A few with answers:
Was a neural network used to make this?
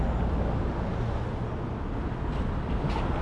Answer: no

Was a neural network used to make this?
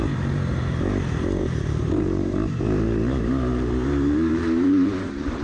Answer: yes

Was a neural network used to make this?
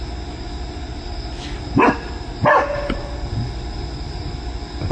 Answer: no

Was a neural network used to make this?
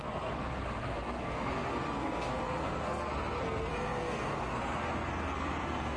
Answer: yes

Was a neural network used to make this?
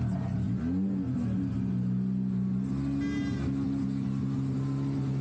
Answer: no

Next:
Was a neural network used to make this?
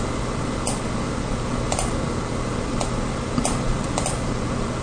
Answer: no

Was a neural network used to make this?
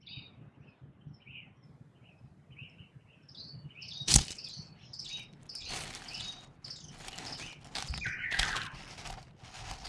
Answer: no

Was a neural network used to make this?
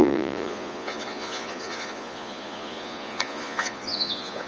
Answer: yes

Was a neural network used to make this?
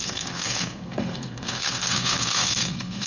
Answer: yes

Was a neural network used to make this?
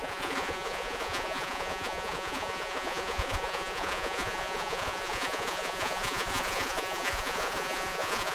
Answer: yes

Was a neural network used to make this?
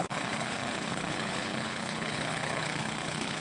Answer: yes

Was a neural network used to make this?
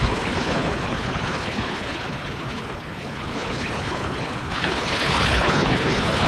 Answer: yes